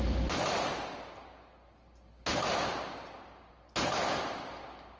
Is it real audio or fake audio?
real